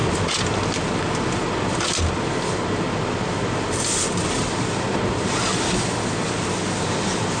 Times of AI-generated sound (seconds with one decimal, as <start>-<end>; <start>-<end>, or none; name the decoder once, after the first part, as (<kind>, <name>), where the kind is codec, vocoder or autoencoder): none